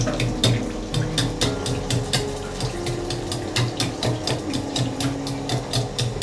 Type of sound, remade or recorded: recorded